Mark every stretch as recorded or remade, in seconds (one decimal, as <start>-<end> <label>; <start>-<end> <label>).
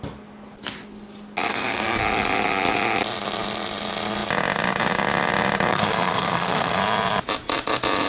0.0-1.5 recorded; 1.5-2.0 remade; 2.0-5.7 recorded; 5.7-6.8 remade; 6.8-8.1 recorded